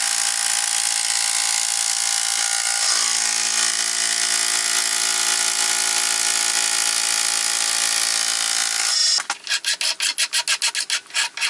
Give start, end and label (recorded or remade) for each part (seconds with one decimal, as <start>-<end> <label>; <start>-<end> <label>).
0.0-11.5 recorded